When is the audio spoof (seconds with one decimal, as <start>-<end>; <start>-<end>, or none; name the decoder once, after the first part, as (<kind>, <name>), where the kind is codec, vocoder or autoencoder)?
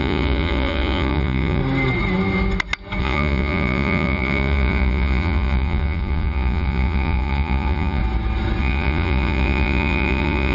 0.0-1.6 (vocoder, Vocos); 3.0-8.0; 8.6-10.5